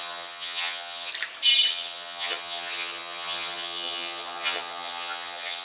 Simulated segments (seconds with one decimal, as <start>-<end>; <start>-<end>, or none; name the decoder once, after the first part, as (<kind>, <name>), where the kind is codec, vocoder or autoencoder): 0.0-1.1 (vocoder, HiFi-GAN); 1.7-5.6